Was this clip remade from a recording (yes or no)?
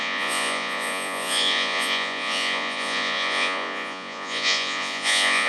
yes